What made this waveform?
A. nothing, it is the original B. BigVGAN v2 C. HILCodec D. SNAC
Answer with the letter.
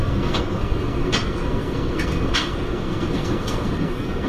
D